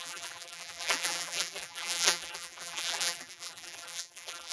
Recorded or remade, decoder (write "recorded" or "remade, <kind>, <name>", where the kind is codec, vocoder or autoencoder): remade, vocoder, BigVGAN v2